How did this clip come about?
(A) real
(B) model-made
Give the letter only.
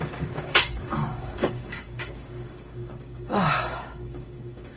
B